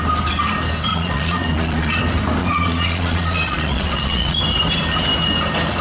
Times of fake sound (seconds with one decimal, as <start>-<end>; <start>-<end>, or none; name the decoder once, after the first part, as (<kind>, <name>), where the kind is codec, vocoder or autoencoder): 0.9-2.0 (vocoder, Vocos); 2.4-4.4

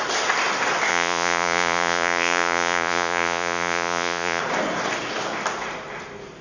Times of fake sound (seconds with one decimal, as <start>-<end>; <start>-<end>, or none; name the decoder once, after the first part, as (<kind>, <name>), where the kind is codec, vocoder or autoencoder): 0.9-4.4 (vocoder, Vocos)

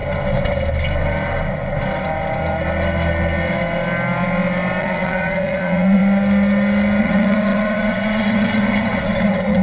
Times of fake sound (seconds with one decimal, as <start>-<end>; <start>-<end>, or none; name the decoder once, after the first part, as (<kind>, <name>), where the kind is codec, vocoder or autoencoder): 4.8-6.0 (vocoder, Vocos); 7.0-9.6

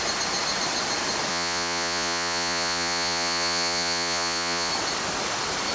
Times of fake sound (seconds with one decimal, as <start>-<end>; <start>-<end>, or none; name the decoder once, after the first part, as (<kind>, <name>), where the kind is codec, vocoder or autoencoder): 1.3-4.7 (vocoder, Vocos)

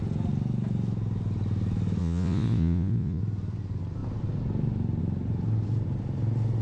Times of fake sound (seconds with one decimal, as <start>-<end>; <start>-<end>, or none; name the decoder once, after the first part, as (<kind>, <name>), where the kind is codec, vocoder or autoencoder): 2.0-3.2 (vocoder, Vocos)

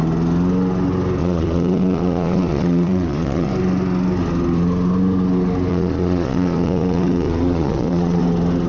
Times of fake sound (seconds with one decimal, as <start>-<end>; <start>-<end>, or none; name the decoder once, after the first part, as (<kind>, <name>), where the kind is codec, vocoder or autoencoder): 1.2-3.5 (vocoder, Vocos); 5.7-8.2